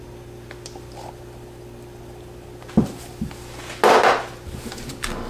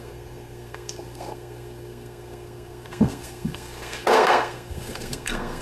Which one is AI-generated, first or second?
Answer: second